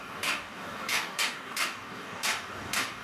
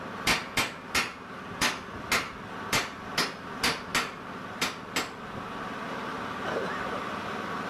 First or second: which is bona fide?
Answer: second